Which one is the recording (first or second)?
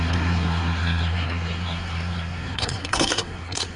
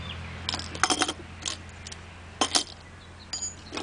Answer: second